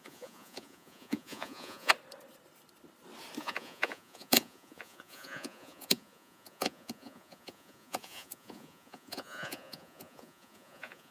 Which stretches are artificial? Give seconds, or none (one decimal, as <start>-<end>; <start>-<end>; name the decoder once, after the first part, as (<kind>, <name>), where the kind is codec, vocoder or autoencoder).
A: 0.0-1.9 (vocoder, Vocos); 3.4-11.1